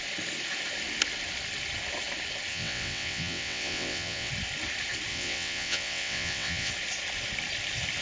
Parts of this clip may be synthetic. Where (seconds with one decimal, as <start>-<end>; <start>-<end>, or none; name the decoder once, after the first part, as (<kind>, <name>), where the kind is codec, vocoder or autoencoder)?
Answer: 2.5-4.3 (vocoder, WaveNeXt); 5.1-6.7